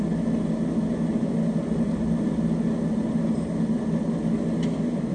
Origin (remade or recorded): recorded